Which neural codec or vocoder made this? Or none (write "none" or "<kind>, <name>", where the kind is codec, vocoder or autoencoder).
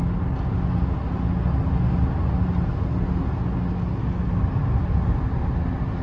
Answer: none